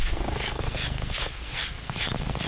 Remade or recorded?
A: remade